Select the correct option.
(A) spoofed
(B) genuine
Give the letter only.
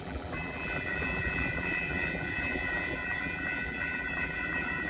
A